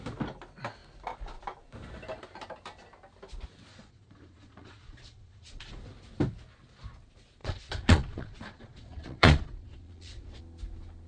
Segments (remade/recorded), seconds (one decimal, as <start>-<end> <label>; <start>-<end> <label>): 0.0-3.7 recorded; 3.7-5.8 remade; 5.8-7.4 recorded; 7.4-10.4 remade; 10.4-11.1 recorded